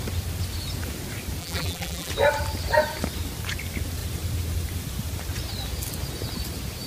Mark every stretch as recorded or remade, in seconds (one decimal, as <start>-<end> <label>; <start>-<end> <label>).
0.0-1.4 recorded; 1.4-2.1 remade; 2.1-6.9 recorded